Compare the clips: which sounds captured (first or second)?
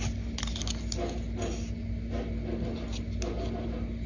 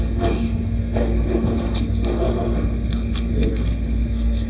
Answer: first